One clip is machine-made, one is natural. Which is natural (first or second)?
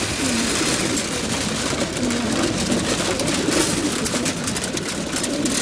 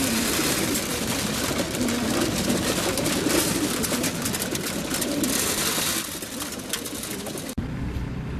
first